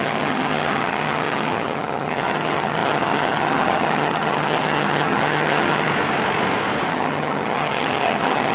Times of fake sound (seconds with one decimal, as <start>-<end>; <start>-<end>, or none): 0.0-5.9; 6.9-8.5